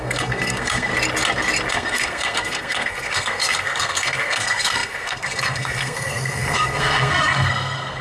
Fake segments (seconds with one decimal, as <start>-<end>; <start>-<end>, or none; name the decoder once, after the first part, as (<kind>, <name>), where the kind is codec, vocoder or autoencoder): 0.0-0.9 (codec, SNAC); 1.7-8.0